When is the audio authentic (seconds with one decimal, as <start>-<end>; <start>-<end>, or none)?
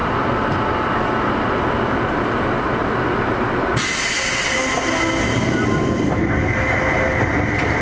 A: 0.0-7.8